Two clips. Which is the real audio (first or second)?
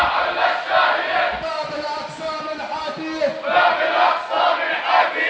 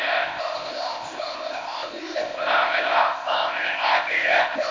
first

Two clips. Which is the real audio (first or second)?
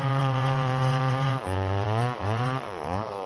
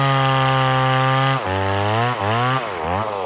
second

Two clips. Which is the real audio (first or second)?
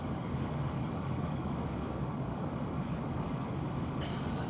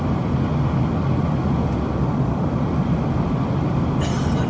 second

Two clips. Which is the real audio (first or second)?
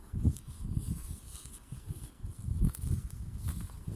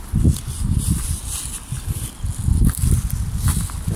second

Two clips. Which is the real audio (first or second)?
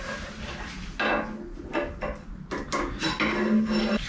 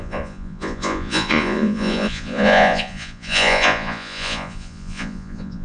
first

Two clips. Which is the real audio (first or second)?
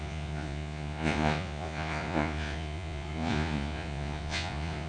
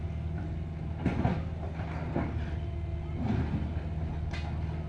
second